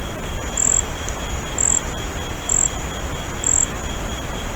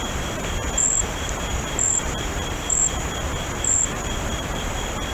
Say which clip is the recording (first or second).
first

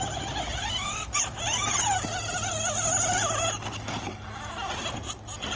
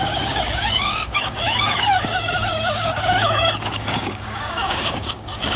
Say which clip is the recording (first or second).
first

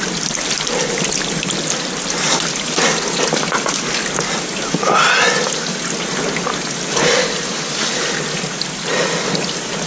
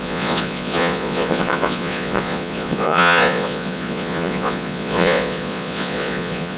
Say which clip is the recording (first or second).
first